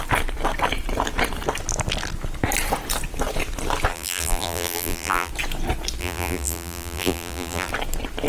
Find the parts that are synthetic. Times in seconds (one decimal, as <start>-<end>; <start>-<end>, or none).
3.9-5.3; 6.0-7.7